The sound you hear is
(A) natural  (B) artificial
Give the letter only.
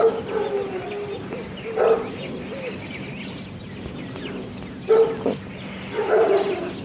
A